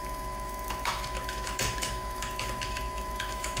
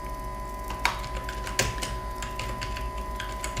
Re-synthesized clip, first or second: first